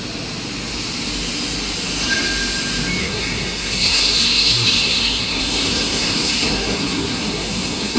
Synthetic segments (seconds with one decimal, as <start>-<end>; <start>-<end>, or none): 3.0-8.0